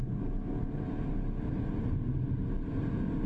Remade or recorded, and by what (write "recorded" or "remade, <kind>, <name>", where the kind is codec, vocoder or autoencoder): recorded